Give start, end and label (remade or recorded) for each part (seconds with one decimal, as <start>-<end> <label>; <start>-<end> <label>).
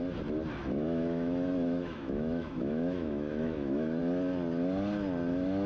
0.0-0.6 recorded; 0.6-4.0 remade; 4.0-5.7 recorded